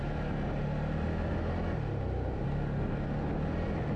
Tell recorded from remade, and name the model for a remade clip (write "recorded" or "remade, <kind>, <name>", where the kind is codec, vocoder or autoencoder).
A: recorded